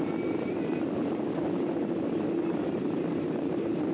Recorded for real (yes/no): no